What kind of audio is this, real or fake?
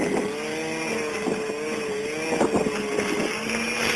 real